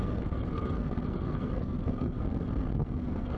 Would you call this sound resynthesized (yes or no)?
yes